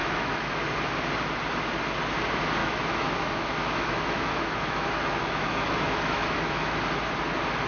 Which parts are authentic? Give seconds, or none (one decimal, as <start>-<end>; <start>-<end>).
0.5-2.6; 6.8-7.7